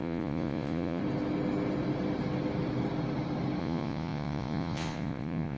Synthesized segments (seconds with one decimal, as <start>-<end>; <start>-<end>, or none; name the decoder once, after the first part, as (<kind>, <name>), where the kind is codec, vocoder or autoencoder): 0.0-1.0 (vocoder, Vocos); 3.6-5.6